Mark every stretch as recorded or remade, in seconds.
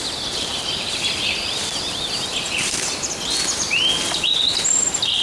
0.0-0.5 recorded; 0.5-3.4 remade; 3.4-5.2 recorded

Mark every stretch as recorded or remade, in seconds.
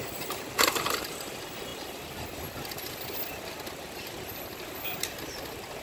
0.0-5.8 recorded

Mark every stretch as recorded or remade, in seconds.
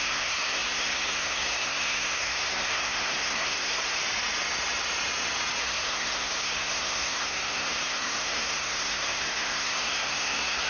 0.0-4.0 remade; 4.0-5.6 recorded; 5.6-10.7 remade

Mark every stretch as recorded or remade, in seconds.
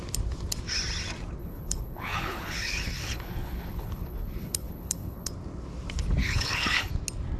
0.0-1.4 recorded; 1.4-5.3 remade; 5.3-6.2 recorded; 6.2-6.9 remade; 6.9-7.4 recorded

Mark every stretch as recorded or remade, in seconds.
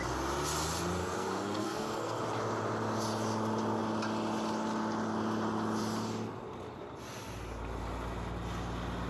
0.0-1.0 recorded; 1.0-2.2 remade; 2.2-9.1 recorded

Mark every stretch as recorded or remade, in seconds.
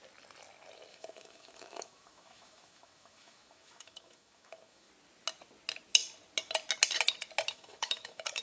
0.0-0.9 recorded; 0.9-4.9 remade; 4.9-7.5 recorded; 7.5-8.4 remade